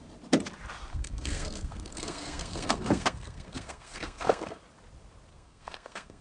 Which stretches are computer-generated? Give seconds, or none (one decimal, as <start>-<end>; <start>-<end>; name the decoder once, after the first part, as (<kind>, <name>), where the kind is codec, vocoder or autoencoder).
0.9-4.6 (codec, SNAC); 5.3-6.2